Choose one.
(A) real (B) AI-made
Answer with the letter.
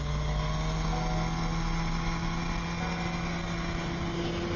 A